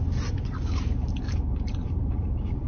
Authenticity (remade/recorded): remade